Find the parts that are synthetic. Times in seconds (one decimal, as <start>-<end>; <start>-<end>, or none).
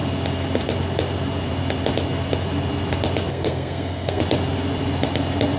3.3-4.2